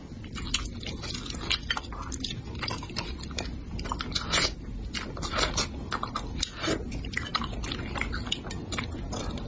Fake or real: real